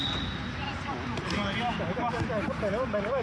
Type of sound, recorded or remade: recorded